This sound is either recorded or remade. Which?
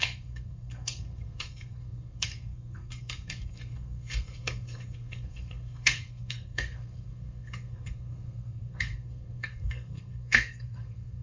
remade